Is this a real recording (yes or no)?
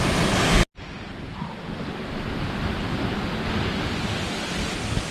yes